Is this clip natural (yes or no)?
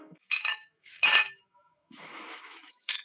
no